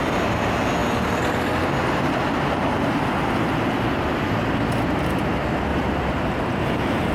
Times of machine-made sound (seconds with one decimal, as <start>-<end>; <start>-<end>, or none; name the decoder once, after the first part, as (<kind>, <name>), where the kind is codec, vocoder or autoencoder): 5.7-7.1 (vocoder, BigVGAN v2)